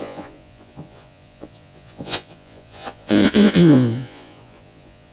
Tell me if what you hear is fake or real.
fake